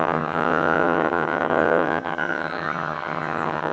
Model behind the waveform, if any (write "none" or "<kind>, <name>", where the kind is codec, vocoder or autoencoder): vocoder, HiFi-GAN